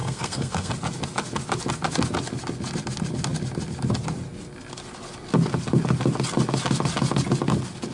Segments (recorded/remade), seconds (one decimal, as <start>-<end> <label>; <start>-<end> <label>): 0.0-0.7 remade; 0.7-7.9 recorded